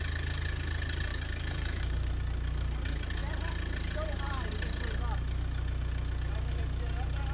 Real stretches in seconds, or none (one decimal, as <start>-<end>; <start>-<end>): 0.0-1.1; 2.1-7.3

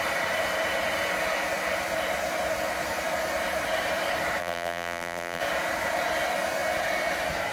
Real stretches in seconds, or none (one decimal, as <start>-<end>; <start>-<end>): 0.0-4.4; 5.4-7.5